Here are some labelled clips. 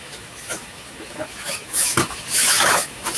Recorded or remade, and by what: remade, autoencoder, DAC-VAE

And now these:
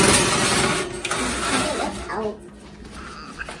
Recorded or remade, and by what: recorded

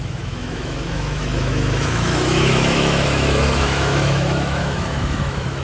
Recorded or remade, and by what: remade, autoencoder, DAC-VAE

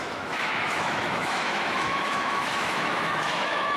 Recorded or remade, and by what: remade, autoencoder, DAC-VAE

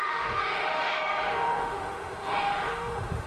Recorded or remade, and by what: remade, autoencoder, DAC-VAE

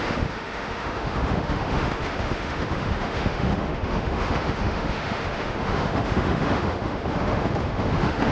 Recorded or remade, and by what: remade, autoencoder, DAC-VAE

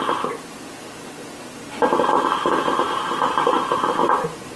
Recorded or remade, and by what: recorded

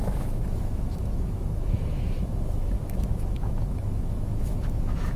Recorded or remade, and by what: remade, autoencoder, DAC-VAE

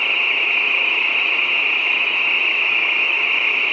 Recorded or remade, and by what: remade, autoencoder, DAC-VAE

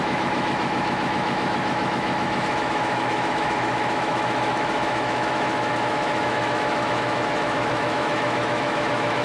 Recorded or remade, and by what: remade, autoencoder, DAC-VAE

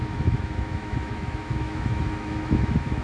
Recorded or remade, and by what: remade, autoencoder, DAC-VAE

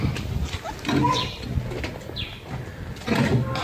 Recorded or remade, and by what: recorded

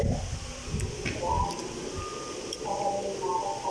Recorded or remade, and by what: recorded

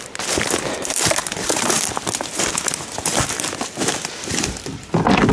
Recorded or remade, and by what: recorded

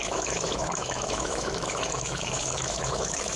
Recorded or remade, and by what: remade, autoencoder, DAC-VAE